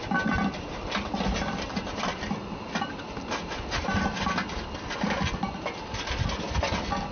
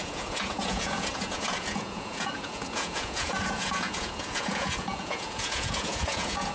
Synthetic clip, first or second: second